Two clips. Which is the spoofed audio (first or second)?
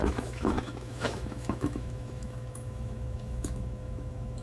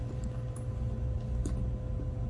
first